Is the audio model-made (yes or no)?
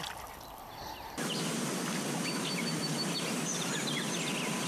yes